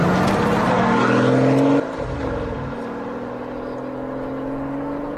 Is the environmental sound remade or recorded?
recorded